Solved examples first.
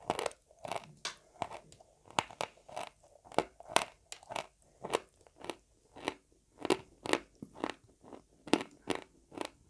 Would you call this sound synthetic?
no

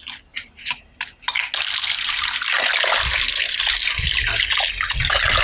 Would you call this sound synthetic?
no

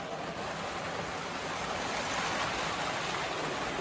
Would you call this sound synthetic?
no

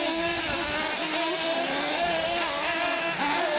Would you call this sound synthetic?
no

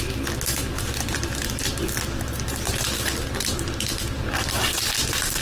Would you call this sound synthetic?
yes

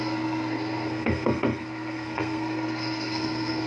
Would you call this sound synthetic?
yes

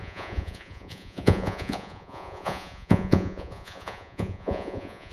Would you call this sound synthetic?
yes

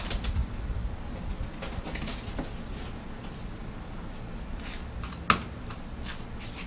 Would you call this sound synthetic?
no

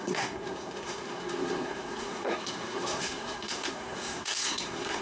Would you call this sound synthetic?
yes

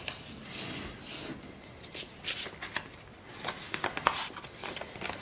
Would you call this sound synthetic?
no